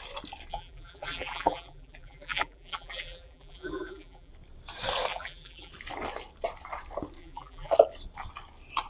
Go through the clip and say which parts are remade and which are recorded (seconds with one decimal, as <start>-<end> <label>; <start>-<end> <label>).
0.0-0.5 recorded; 0.5-4.3 remade; 4.3-5.1 recorded; 5.1-5.7 remade; 5.7-7.2 recorded; 7.2-7.7 remade; 7.7-8.9 recorded